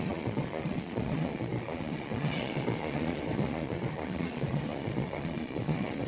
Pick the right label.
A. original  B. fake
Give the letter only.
B